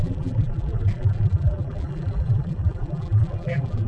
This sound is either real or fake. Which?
fake